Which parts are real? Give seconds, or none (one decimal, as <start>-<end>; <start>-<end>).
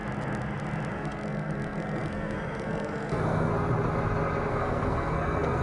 0.0-0.9; 3.5-4.5